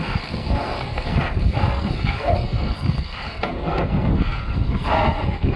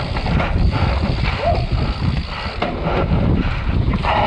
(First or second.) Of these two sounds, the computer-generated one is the first